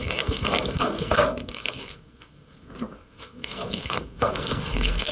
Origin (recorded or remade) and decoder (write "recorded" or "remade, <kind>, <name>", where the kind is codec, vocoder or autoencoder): remade, codec, SNAC